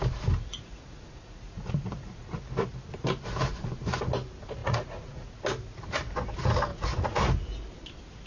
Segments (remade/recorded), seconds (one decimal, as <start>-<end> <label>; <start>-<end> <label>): 0.0-0.5 recorded; 0.5-2.3 remade; 2.3-4.6 recorded; 4.6-5.4 remade; 5.4-6.7 recorded; 6.7-7.2 remade; 7.2-8.3 recorded